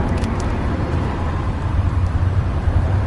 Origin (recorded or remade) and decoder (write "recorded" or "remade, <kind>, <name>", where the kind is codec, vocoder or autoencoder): remade, vocoder, BigVGAN v2